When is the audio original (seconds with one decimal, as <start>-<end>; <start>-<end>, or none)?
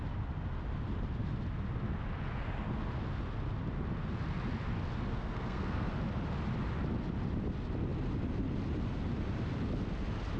0.0-5.1; 5.9-10.4